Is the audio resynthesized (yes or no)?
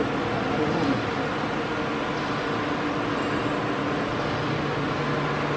no